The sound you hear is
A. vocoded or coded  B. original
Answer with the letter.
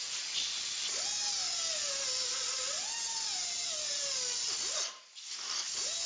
B